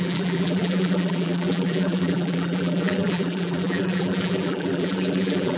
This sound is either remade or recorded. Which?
remade